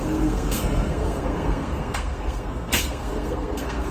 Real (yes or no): no